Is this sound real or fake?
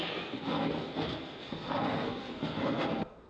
fake